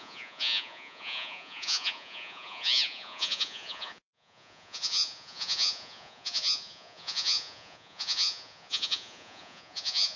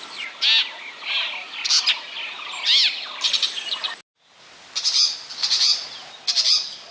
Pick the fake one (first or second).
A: first